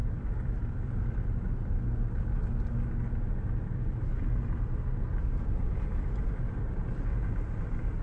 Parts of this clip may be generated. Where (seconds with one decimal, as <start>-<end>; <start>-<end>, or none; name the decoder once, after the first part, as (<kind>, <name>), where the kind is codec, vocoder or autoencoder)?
0.0-1.2 (vocoder, BigVGAN v2); 5.2-6.3; 7.1-7.6